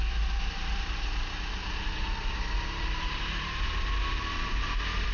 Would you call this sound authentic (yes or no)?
yes